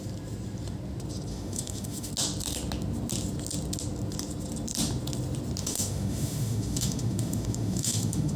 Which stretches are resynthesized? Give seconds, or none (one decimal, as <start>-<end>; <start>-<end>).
1.3-2.1; 5.6-8.4